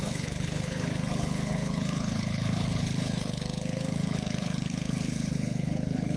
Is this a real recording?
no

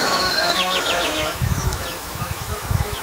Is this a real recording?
no